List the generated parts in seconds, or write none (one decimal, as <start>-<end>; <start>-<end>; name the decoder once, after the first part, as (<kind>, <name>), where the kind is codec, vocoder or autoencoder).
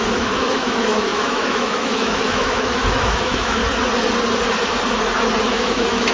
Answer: 0.0-3.6 (autoencoder, DAC-VAE); 5.4-6.1